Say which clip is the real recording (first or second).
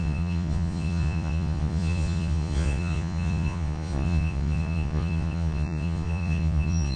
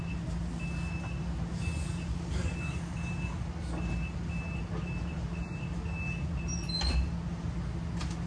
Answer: second